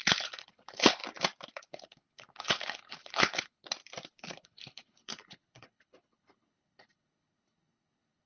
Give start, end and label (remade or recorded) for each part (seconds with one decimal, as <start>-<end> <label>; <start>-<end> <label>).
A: 0.0-1.0 remade; 1.0-1.7 recorded; 1.7-3.6 remade; 3.6-4.1 recorded; 4.1-8.3 remade